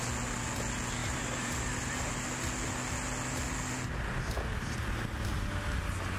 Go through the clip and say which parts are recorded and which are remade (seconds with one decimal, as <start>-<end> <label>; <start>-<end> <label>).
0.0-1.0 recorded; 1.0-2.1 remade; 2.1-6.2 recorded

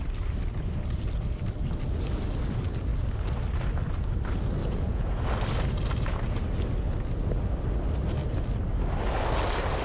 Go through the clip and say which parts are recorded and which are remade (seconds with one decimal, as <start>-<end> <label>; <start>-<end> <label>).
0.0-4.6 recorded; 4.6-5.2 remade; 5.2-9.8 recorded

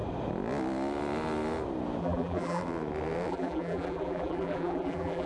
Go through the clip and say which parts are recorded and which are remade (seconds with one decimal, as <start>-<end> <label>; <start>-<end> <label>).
0.0-2.0 recorded; 2.0-2.6 remade; 2.6-3.3 recorded; 3.3-5.3 remade

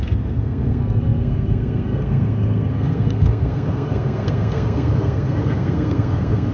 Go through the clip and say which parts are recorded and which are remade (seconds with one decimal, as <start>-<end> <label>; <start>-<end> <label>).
0.0-6.5 remade